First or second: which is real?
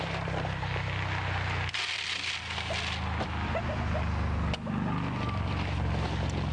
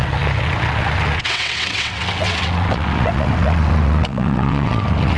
first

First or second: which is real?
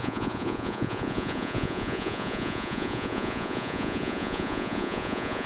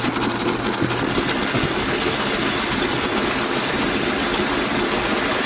second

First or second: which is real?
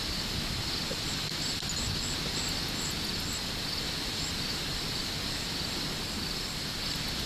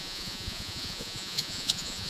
first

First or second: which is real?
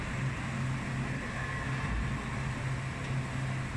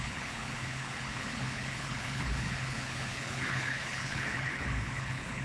first